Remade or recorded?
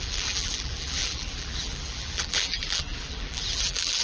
remade